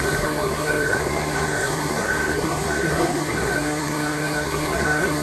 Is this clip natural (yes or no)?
no